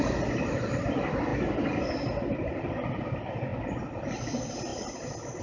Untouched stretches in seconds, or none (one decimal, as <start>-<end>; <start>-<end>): 0.0-5.4